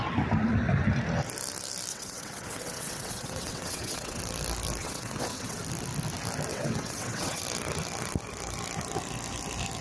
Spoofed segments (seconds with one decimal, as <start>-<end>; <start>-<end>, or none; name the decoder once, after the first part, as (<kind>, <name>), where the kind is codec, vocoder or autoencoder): 1.9-4.2 (vocoder, WaveNeXt); 4.8-5.6; 6.5-7.4